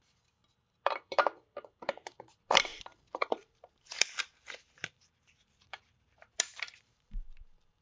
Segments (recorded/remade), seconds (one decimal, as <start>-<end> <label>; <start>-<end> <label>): 0.0-7.8 remade